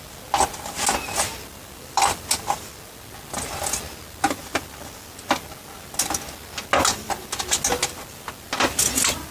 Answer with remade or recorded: recorded